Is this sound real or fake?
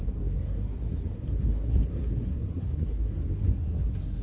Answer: fake